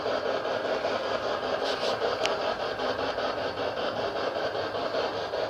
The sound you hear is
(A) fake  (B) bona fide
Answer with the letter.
B